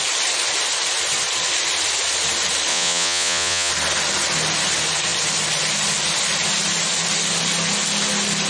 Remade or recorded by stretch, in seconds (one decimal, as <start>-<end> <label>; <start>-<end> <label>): 0.0-2.7 recorded; 2.7-3.7 remade; 3.7-8.5 recorded